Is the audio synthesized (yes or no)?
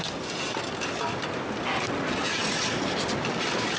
no